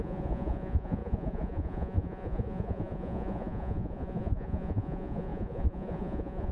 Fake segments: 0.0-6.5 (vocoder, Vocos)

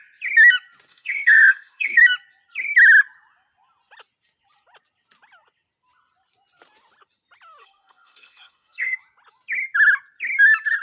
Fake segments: 0.9-2.0 (codec, SNAC); 7.6-9.0

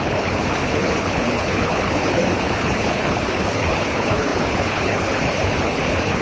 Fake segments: 0.0-6.2 (codec, HILCodec)

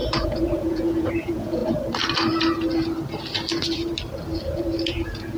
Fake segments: 0.0-1.6 (vocoder, Vocos); 4.8-5.4